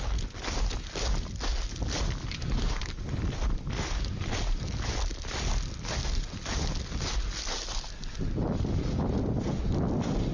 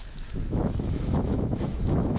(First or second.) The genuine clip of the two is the first